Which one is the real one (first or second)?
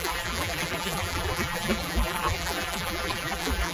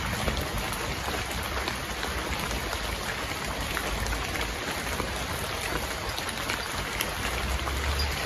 second